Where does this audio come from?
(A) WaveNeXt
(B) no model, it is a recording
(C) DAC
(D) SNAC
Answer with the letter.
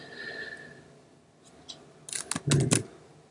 B